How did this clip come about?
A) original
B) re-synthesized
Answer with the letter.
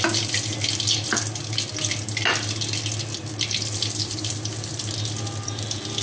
A